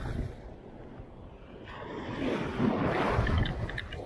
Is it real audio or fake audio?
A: real